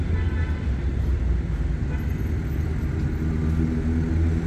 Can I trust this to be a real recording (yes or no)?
yes